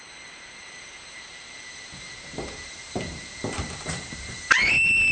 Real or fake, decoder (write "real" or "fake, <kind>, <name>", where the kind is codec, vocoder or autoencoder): real